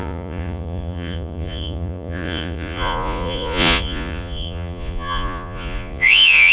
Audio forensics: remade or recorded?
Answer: remade